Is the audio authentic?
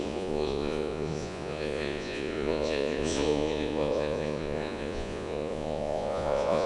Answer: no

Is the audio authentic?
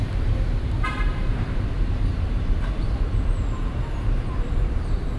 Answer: no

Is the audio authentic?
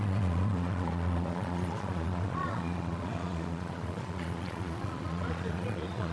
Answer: no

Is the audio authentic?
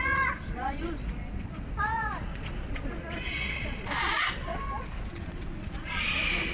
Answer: no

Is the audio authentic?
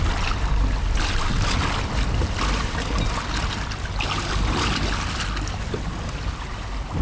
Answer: yes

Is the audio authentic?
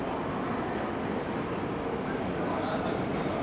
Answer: yes